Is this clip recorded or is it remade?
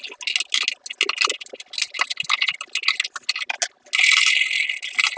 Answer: recorded